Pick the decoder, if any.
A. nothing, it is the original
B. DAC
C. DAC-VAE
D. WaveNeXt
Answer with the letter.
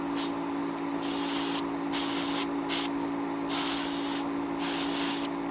A